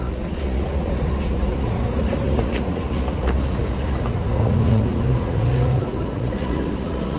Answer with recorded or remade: remade